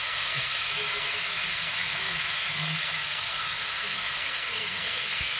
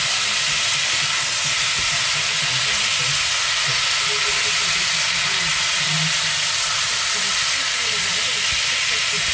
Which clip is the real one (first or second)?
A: second